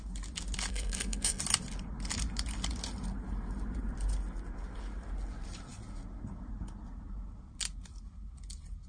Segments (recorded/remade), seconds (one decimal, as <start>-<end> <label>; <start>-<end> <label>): 0.0-0.7 recorded; 0.7-1.4 remade; 1.4-8.9 recorded